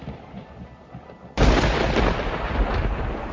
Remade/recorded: recorded